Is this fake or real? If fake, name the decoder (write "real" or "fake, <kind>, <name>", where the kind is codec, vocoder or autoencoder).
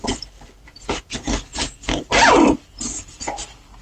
real